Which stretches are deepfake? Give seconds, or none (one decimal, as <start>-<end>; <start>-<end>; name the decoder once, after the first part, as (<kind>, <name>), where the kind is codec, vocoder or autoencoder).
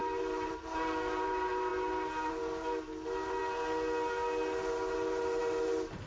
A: 0.0-0.5 (vocoder, BigVGAN v2)